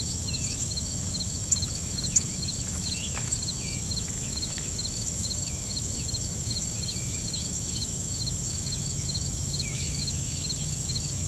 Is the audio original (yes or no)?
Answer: no